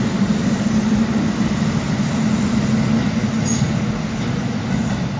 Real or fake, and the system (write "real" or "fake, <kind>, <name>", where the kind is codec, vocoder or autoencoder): real